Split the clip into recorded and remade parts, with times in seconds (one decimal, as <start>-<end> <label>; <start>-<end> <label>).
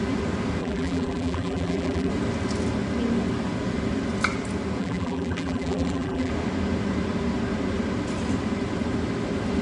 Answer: 0.0-0.6 recorded; 0.6-2.1 remade; 2.1-4.8 recorded; 4.8-6.3 remade; 6.3-9.6 recorded